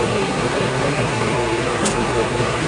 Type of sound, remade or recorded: remade